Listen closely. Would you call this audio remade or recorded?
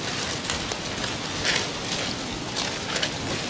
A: recorded